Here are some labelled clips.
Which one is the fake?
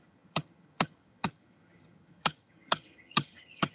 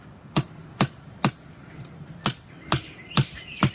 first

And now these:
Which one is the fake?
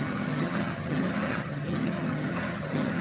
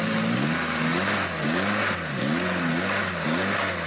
first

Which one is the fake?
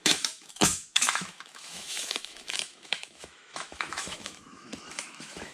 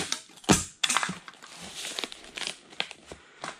first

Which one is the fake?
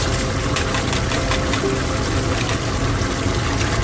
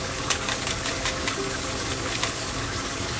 second